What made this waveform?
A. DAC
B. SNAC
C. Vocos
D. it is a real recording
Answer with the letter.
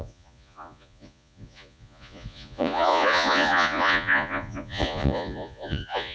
C